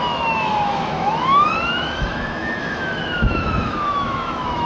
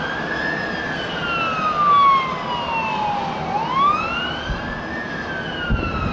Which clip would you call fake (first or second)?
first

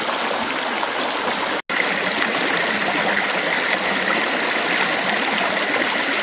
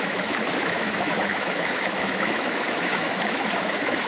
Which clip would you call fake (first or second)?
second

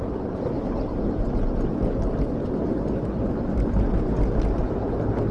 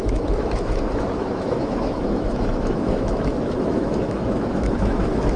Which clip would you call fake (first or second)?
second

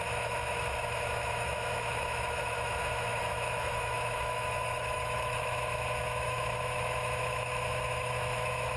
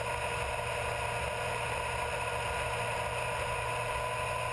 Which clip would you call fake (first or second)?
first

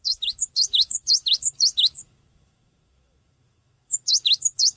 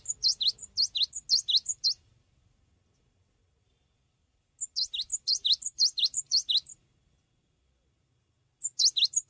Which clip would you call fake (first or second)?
first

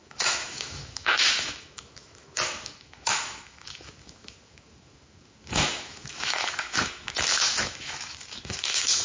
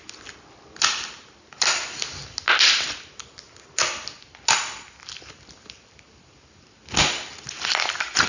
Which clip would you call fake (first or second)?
first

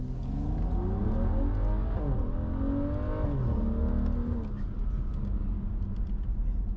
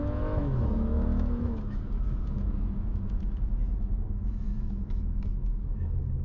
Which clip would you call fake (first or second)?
second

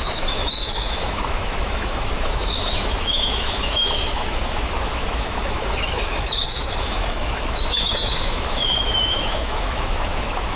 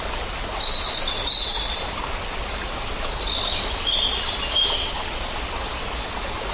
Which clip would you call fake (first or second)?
first